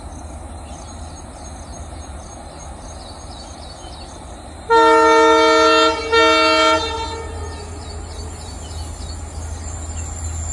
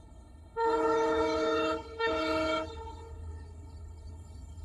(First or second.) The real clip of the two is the first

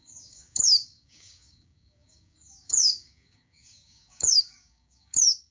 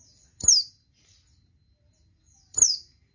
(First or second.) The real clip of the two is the second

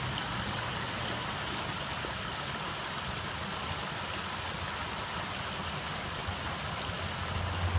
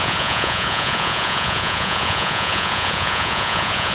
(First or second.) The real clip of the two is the first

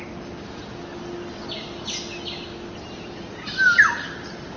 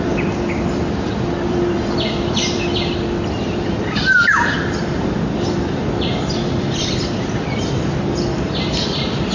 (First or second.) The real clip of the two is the first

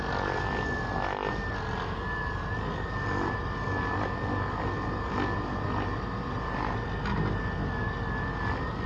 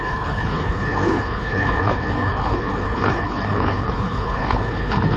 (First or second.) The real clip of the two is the first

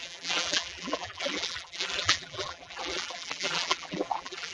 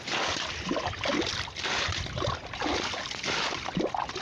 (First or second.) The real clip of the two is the second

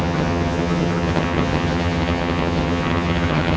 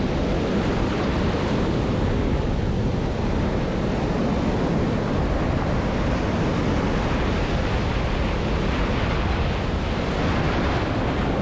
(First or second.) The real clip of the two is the second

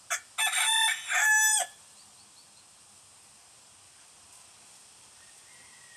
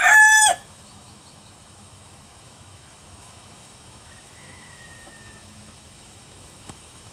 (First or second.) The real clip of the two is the first